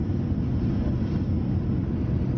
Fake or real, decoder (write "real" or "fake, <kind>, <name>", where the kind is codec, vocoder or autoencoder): real